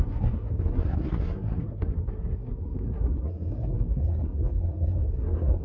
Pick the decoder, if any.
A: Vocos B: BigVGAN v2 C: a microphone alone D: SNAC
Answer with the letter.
D